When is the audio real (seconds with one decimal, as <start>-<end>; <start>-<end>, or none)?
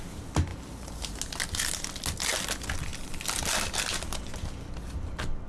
0.0-0.5; 1.2-5.5